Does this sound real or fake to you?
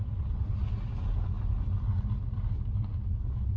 real